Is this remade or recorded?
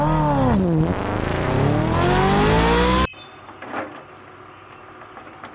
recorded